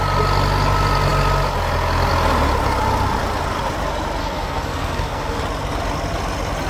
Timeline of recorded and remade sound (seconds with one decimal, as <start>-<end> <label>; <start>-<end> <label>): 0.0-4.2 recorded; 4.2-5.4 remade; 5.4-6.7 recorded